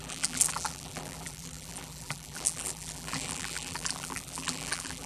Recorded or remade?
remade